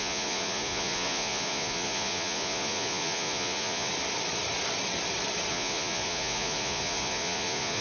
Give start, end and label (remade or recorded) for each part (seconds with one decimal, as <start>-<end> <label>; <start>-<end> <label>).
0.0-3.9 remade; 3.9-5.5 recorded; 5.5-7.8 remade